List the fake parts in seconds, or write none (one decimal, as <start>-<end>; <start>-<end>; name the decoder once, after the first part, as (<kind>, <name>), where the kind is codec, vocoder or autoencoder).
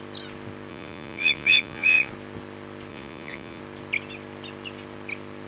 0.7-2.1 (vocoder, Vocos); 2.9-3.6